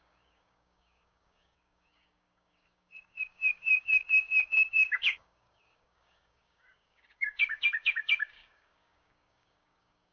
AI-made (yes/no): yes